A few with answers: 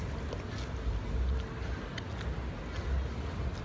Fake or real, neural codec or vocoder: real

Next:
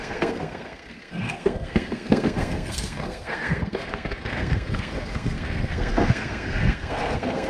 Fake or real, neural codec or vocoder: fake, codec, SNAC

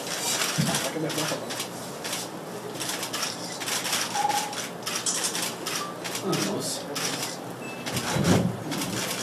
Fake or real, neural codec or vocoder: real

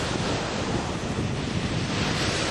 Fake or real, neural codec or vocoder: real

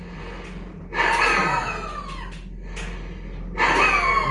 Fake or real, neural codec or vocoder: real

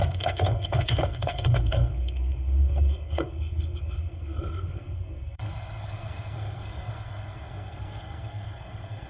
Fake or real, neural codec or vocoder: fake, codec, SNAC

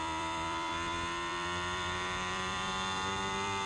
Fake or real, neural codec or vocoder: fake, vocoder, BigVGAN v2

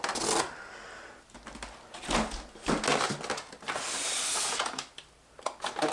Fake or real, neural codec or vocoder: real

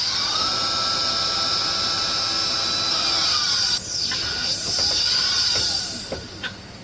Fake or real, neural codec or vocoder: fake, vocoder, BigVGAN v2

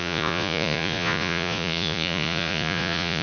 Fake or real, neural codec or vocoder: fake, vocoder, Vocos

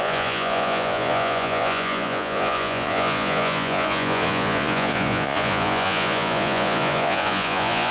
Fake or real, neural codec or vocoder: fake, vocoder, Vocos